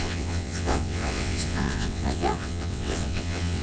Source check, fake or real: fake